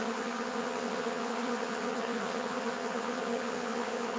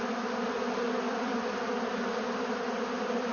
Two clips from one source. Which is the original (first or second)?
second